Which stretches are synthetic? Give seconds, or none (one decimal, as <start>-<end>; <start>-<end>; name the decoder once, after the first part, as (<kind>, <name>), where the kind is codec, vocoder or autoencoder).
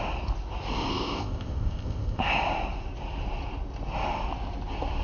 0.9-2.2 (codec, ZipCodec)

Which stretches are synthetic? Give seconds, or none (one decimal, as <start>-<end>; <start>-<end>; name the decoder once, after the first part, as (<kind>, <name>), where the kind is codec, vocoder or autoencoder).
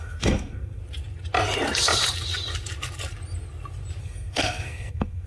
0.0-0.8 (codec, SNAC); 4.0-5.3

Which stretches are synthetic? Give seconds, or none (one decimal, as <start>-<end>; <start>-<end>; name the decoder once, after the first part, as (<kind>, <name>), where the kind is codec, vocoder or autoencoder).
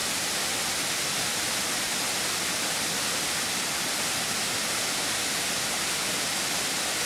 none